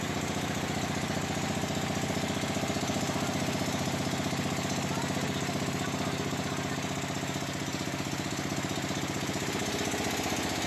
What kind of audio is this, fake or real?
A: real